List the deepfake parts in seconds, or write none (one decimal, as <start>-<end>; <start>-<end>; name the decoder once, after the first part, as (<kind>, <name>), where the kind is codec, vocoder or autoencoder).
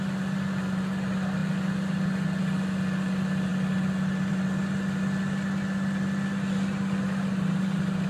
none